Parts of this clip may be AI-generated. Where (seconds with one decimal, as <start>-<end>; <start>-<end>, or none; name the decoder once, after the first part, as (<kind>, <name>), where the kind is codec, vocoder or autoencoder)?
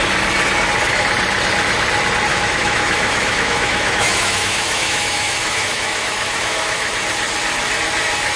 2.3-6.9 (autoencoder, DAC-VAE)